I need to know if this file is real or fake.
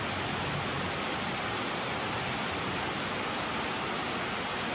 real